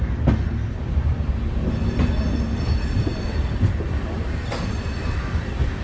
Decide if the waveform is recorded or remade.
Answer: recorded